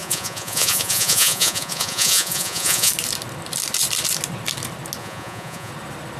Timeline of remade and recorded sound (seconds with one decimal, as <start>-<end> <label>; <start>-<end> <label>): 0.0-2.9 remade; 2.9-5.0 recorded; 5.0-5.7 remade; 5.7-6.2 recorded